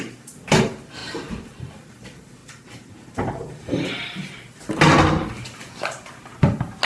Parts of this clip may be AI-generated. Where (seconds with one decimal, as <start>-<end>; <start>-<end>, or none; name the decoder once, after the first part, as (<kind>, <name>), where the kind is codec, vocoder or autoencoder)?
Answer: 1.0-1.7 (vocoder, BigVGAN v2); 2.4-3.9